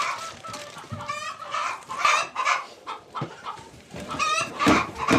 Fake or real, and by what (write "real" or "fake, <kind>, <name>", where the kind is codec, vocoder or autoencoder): fake, vocoder, BigVGAN v2